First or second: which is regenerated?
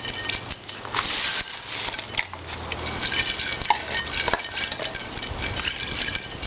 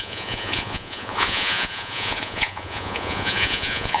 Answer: second